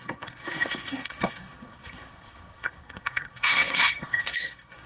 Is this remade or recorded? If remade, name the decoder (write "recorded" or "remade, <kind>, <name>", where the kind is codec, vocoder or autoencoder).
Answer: remade, codec, SNAC